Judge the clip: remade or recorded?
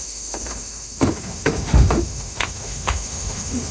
remade